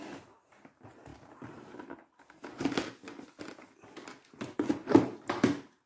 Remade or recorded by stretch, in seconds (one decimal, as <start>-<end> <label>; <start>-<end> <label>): 0.0-5.9 recorded